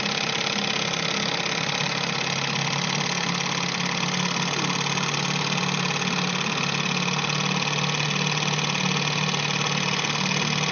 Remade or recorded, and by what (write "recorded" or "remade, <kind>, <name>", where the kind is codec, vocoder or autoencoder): recorded